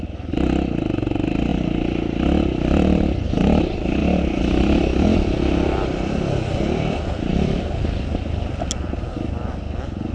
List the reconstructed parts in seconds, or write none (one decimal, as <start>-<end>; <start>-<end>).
1.5-3.6; 4.0-5.4